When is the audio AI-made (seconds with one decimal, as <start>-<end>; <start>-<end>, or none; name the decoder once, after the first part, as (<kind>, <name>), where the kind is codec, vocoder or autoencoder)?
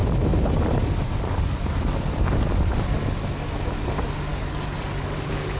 4.3-5.6 (codec, DAC)